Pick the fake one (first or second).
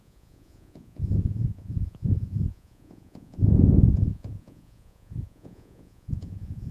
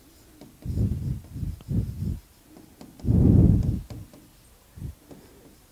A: first